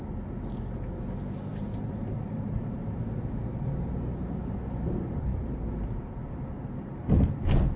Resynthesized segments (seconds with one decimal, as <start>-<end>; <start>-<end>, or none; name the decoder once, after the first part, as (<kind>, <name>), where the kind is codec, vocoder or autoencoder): 1.5-3.9 (vocoder, BigVGAN v2); 5.3-6.2